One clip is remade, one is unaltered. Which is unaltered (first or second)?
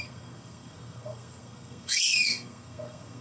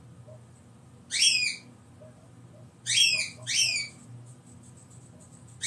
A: second